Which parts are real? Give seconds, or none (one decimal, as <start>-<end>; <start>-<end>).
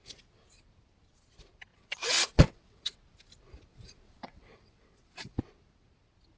0.0-1.7; 3.0-3.7; 5.4-6.4